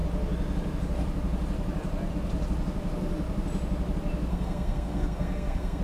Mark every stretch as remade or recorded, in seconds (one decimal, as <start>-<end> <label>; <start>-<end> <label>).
0.0-4.3 recorded; 4.3-5.8 remade